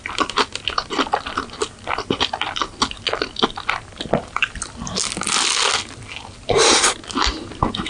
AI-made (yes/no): no